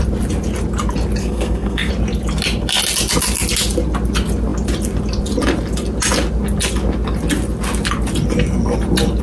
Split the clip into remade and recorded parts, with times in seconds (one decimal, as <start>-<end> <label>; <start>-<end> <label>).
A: 0.0-1.2 recorded; 1.2-1.9 remade; 1.9-9.2 recorded